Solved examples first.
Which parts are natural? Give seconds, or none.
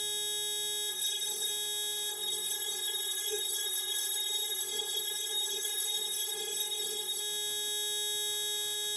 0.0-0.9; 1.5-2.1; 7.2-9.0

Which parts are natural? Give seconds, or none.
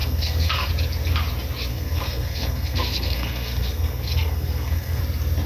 0.7-1.7; 5.0-5.5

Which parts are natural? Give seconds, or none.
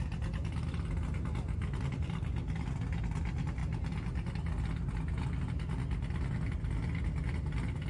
0.0-7.9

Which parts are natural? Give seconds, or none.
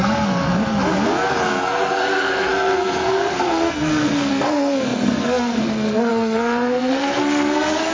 0.4-1.3